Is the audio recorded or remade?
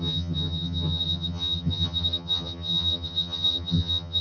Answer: remade